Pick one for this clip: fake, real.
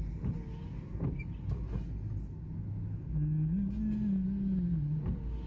real